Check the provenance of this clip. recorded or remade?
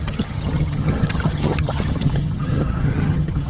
remade